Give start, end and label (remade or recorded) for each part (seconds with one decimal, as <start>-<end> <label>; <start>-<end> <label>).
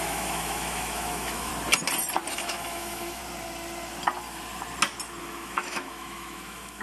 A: 0.0-1.5 remade; 1.5-2.3 recorded; 2.3-3.2 remade; 3.2-5.2 recorded; 5.2-6.8 remade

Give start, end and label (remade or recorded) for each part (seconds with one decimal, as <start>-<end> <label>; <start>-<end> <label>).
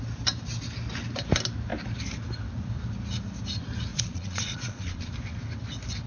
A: 0.0-3.9 recorded; 3.9-5.1 remade; 5.1-6.1 recorded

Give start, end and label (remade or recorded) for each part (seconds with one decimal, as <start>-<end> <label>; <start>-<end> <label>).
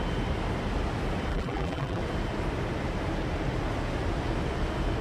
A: 0.0-1.3 recorded; 1.3-2.0 remade; 2.0-5.0 recorded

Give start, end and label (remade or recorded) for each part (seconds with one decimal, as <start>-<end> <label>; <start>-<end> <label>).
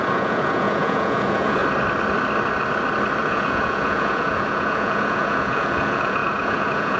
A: 0.0-1.6 remade; 1.6-3.2 recorded; 3.2-7.0 remade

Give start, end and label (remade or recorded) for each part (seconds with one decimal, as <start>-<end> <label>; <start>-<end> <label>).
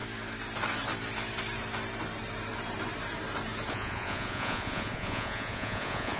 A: 0.0-3.7 recorded; 3.7-6.2 remade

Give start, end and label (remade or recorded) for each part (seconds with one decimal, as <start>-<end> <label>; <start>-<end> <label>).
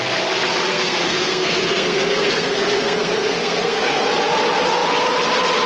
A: 0.0-0.7 recorded; 0.7-4.1 remade; 4.1-5.7 recorded